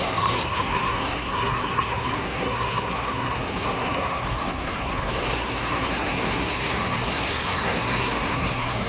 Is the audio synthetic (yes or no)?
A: yes